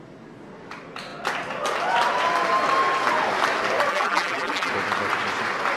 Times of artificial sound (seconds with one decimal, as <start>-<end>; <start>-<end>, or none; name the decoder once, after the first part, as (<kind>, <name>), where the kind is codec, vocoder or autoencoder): 3.9-4.7 (vocoder, BigVGAN v2)